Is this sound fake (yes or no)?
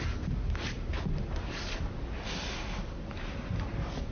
no